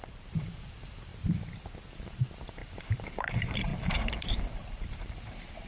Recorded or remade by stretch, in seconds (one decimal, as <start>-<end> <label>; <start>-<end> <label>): 0.0-1.1 remade; 1.1-1.9 recorded; 1.9-5.7 remade